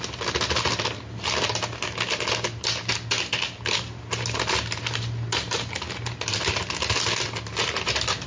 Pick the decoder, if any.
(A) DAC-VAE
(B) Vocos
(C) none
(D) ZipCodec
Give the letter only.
C